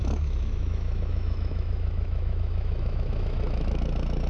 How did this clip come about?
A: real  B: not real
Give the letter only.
B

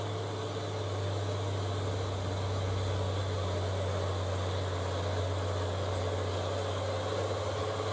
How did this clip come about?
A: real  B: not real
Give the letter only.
A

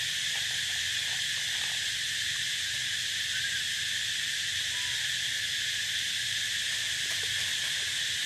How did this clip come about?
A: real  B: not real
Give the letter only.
A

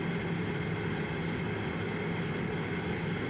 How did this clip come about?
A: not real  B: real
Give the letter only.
B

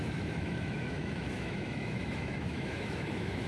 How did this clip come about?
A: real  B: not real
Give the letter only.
B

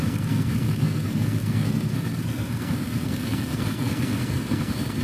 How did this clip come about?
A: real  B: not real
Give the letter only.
B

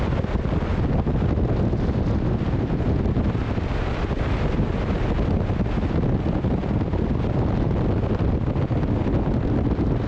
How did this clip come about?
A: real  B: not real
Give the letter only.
A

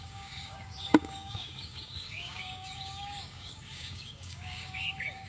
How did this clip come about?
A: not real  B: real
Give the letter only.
A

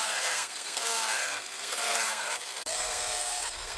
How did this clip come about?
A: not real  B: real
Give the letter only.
A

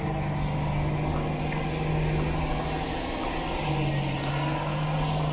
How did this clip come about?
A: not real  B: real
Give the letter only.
B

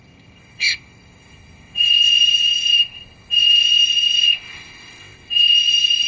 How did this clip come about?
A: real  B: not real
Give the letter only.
B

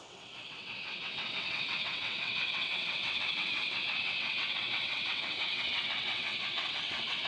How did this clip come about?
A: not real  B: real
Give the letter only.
A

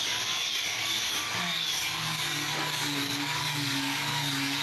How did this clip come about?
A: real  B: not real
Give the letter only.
B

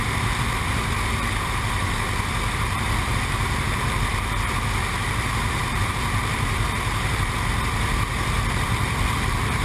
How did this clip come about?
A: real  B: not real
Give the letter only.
B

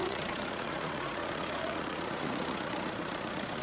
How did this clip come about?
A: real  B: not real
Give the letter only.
B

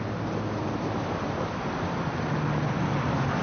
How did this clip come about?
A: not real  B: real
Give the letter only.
B